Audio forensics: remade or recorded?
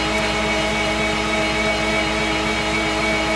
recorded